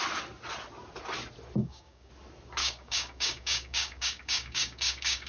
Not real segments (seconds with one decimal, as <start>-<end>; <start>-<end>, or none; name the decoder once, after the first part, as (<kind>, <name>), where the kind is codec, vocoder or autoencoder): 1.6-2.1 (codec, DAC); 2.6-5.3